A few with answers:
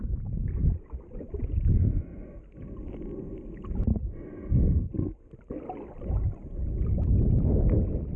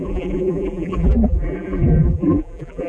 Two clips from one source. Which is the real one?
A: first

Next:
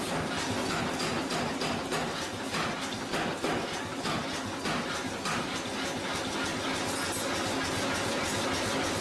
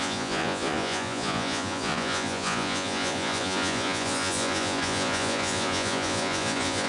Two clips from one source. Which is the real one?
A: first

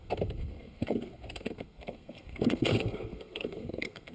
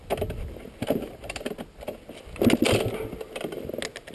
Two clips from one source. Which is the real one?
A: second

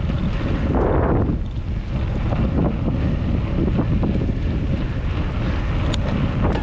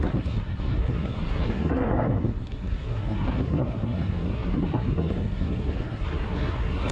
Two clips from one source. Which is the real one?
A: first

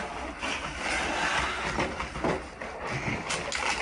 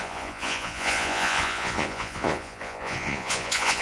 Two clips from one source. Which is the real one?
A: first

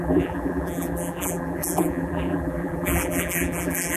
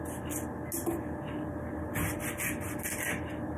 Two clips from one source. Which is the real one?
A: second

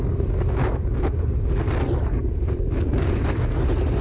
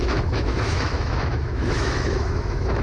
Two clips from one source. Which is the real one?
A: first